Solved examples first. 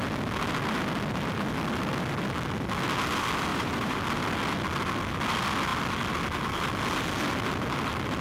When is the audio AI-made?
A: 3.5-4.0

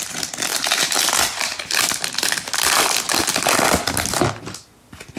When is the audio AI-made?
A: none

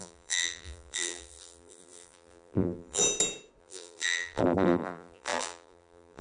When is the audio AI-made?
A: 0.0-3.0; 3.6-6.2

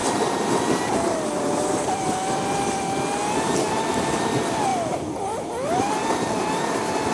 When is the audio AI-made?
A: 4.7-6.1